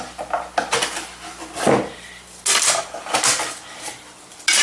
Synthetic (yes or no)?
no